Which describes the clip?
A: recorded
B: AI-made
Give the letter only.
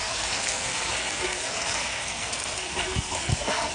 B